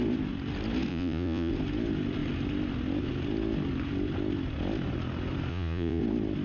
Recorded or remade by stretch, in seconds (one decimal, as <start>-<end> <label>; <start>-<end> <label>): 0.0-0.9 recorded; 0.9-1.5 remade; 1.5-5.5 recorded; 5.5-6.0 remade; 6.0-6.4 recorded